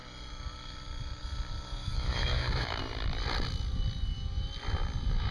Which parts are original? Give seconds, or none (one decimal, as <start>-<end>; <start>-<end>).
0.0-1.8; 2.8-5.3